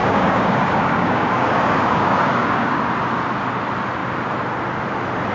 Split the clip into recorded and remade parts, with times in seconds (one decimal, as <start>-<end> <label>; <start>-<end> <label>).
0.0-2.8 remade; 2.8-5.3 recorded